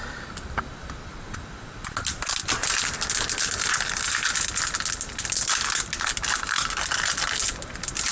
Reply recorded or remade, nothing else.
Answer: recorded